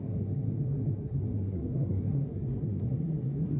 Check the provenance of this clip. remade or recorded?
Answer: remade